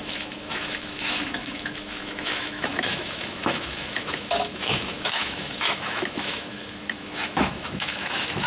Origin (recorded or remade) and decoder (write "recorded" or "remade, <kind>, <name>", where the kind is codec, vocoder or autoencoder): remade, autoencoder, DAC-VAE